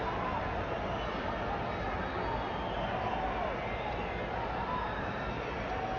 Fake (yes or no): no